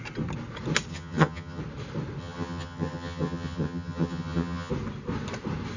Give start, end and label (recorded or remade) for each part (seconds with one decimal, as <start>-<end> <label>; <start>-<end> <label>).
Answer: 0.0-0.9 recorded; 0.9-1.6 remade; 1.6-2.2 recorded; 2.2-4.7 remade; 4.7-5.8 recorded